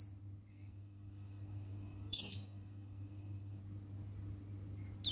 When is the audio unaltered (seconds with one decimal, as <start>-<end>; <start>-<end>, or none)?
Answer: 0.0-0.5; 3.6-5.1